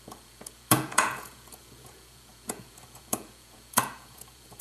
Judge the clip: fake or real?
fake